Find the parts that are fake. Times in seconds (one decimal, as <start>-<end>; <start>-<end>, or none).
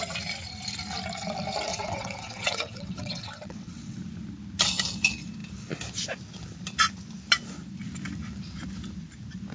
1.7-4.0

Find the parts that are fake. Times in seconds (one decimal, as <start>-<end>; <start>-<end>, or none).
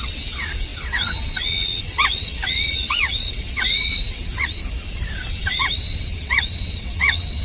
0.0-4.6; 5.3-7.4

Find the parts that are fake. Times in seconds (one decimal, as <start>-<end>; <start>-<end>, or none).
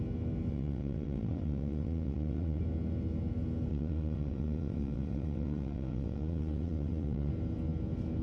0.5-2.6; 3.7-7.3